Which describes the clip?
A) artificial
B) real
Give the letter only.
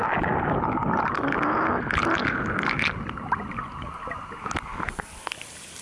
B